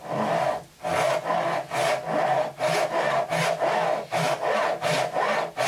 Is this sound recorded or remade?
recorded